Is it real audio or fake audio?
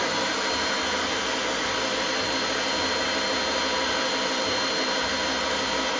real